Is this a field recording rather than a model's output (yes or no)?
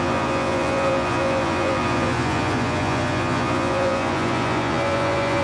no